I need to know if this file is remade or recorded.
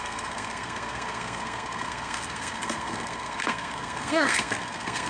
remade